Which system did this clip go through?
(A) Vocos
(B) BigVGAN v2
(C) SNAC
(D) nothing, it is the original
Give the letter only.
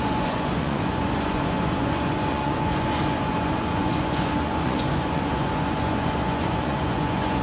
A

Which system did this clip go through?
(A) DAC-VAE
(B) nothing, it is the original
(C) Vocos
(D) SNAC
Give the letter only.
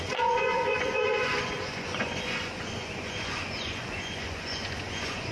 C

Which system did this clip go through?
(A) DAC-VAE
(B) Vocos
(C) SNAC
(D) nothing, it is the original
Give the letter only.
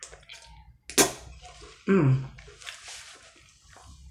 D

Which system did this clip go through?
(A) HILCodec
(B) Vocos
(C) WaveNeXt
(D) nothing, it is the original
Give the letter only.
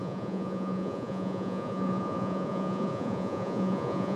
B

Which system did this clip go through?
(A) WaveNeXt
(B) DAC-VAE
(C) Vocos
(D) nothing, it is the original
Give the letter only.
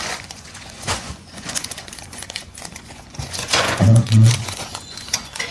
C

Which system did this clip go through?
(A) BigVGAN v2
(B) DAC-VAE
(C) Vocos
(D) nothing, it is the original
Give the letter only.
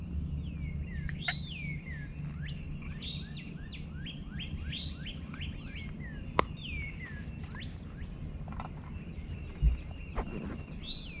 D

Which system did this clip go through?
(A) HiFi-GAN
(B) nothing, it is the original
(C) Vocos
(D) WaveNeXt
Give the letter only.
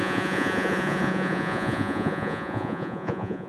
C